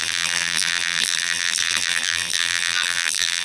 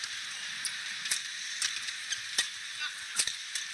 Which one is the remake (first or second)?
first